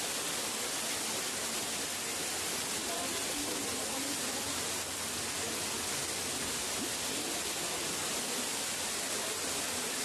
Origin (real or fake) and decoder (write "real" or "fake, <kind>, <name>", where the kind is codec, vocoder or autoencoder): real